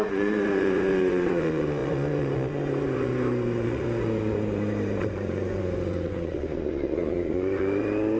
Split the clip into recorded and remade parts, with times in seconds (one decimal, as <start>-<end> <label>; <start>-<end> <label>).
0.0-8.2 remade